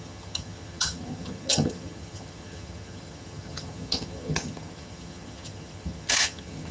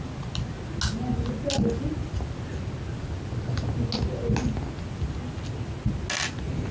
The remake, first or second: first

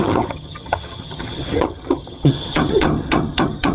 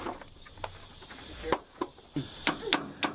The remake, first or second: first